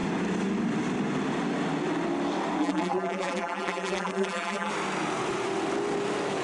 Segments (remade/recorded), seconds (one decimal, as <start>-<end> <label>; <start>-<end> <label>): 0.0-2.6 recorded; 2.6-4.7 remade; 4.7-6.4 recorded